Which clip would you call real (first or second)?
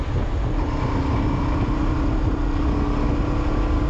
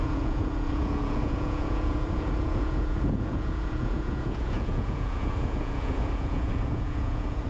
first